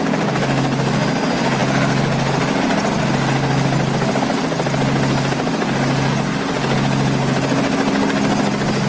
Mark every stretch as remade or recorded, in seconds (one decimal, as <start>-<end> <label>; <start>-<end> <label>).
0.0-8.9 recorded